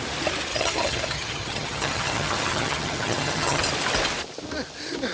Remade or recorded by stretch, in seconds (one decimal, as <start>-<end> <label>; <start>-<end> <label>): 0.0-0.5 recorded; 0.5-3.6 remade; 3.6-5.1 recorded